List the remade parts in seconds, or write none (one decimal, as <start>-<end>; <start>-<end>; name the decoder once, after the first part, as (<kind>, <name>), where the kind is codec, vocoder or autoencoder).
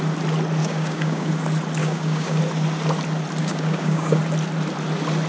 0.6-1.3 (codec, DAC); 1.8-2.4; 3.4-4.2